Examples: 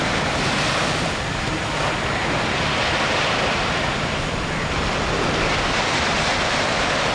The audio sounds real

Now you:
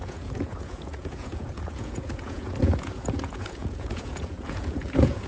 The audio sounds fake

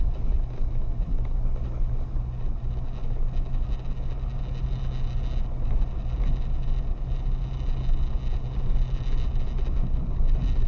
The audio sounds real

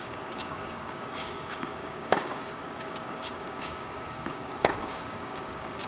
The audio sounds fake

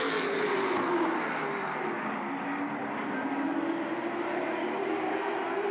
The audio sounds real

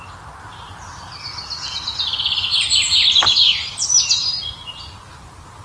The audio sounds real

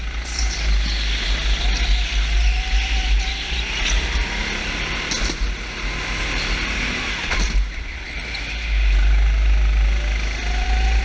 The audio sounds real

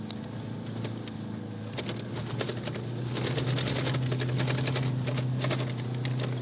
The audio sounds real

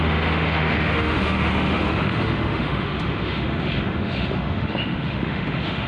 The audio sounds fake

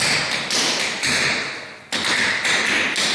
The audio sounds real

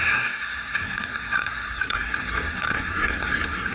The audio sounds fake